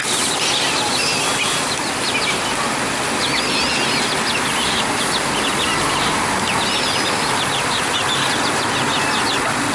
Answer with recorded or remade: recorded